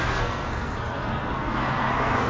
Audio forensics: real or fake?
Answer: fake